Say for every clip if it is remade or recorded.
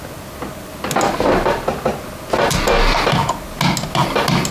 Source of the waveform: recorded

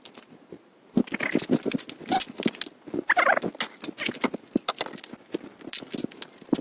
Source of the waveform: recorded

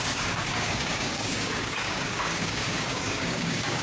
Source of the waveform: remade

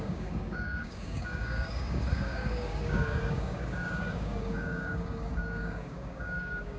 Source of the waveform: remade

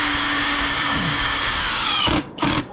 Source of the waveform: remade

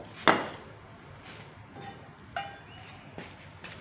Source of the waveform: recorded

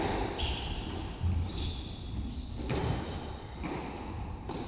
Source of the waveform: recorded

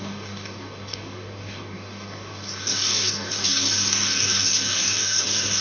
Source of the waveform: remade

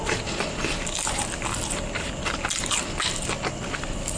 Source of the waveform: recorded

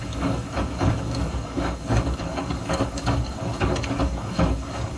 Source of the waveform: remade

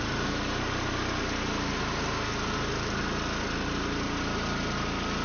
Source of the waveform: recorded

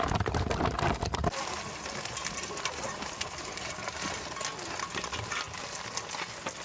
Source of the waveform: recorded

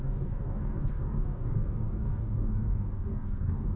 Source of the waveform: remade